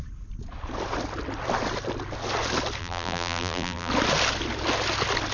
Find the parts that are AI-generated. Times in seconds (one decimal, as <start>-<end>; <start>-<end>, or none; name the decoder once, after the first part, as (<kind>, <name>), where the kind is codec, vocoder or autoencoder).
2.8-3.9 (vocoder, BigVGAN v2)